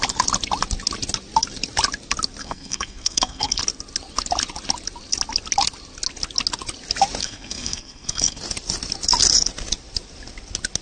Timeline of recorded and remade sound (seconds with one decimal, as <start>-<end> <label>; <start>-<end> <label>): 0.0-2.4 recorded; 2.4-3.6 remade; 3.6-7.2 recorded; 7.2-8.4 remade; 8.4-10.8 recorded